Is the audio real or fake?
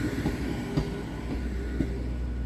real